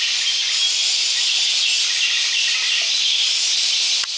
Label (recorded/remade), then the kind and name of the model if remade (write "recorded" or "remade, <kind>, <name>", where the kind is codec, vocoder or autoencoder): recorded